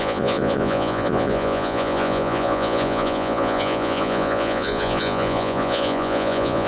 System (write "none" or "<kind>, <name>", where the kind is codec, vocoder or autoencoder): vocoder, Vocos